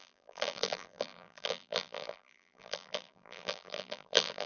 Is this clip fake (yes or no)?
yes